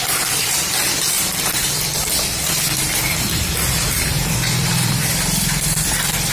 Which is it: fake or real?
fake